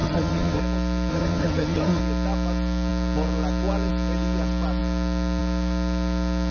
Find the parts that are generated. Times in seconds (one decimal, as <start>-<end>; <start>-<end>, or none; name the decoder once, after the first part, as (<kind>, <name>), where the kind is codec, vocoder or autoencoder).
0.0-0.6 (vocoder, HiFi-GAN); 1.1-2.0